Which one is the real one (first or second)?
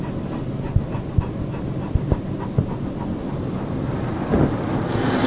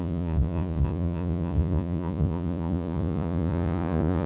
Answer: first